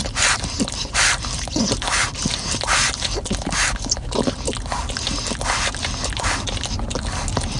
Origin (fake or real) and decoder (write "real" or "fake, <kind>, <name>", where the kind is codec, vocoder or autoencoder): real